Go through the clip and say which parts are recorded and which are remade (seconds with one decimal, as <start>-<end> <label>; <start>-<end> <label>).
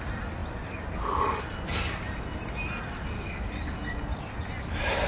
0.0-5.1 recorded